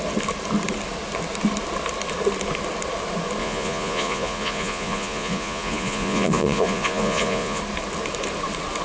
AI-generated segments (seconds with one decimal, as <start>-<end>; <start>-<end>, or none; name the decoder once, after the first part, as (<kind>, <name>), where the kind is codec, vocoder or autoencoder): 3.4-7.6 (vocoder, Vocos)